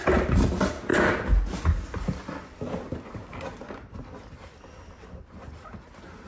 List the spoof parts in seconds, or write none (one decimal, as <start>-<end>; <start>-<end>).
none